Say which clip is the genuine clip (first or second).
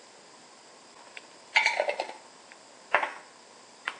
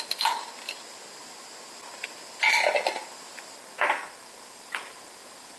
second